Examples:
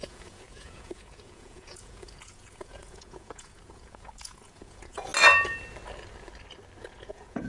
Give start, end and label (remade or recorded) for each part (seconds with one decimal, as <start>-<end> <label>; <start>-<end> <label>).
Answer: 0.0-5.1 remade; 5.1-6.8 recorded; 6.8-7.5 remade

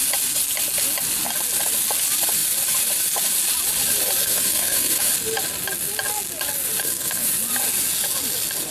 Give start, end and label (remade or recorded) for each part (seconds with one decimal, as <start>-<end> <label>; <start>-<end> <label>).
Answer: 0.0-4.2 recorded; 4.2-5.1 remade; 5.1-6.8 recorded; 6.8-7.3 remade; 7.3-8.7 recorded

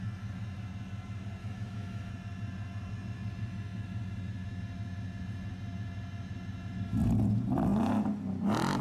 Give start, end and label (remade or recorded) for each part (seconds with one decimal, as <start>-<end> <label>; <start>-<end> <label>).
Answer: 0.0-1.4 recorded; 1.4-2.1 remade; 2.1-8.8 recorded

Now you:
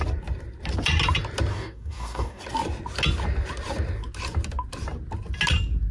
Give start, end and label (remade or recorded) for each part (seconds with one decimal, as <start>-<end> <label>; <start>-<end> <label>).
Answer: 0.0-1.5 recorded; 1.5-2.4 remade; 2.4-5.9 recorded

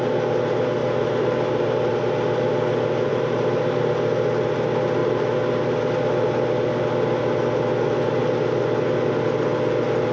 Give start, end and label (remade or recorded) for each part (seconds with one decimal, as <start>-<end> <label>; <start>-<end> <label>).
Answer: 0.0-0.8 recorded; 0.8-1.9 remade; 1.9-3.1 recorded; 3.1-3.9 remade; 3.9-10.1 recorded